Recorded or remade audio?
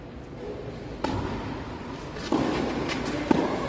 recorded